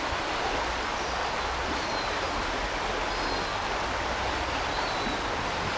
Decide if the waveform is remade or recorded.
recorded